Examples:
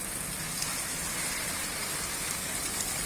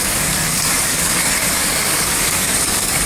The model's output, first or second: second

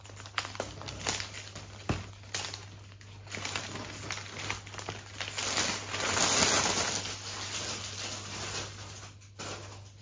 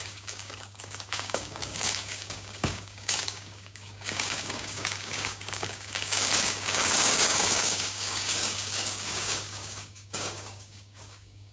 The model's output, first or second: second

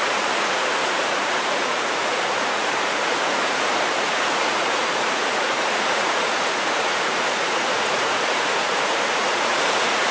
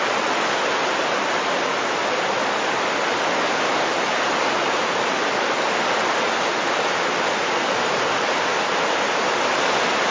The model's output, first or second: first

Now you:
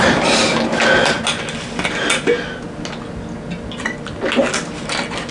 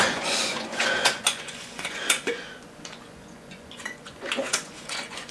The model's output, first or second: second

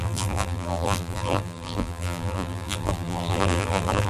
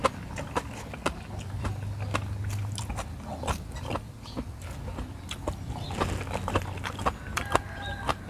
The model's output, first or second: first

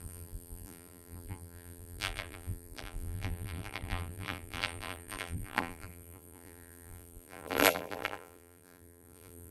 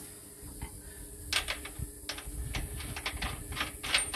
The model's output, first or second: first